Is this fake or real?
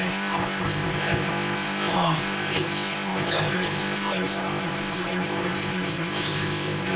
fake